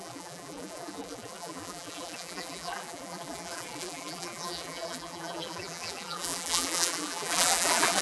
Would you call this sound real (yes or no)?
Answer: no